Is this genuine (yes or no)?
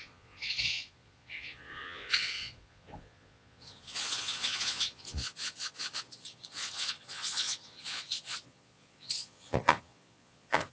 no